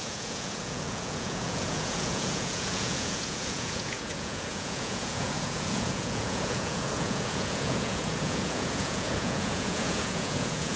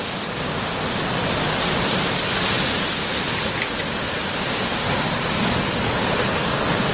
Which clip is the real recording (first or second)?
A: second